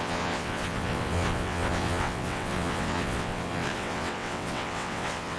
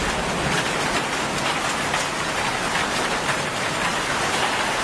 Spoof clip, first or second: first